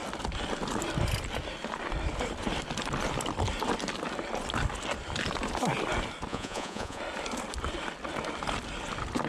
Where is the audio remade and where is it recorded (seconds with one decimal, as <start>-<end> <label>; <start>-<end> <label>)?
0.0-6.3 recorded; 6.3-7.0 remade; 7.0-9.3 recorded